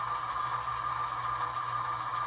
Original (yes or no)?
yes